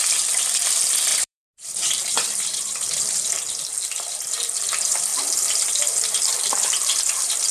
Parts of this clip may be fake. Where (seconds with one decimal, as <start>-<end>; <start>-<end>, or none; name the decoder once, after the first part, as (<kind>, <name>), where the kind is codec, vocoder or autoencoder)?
1.1-3.0 (vocoder, BigVGAN v2)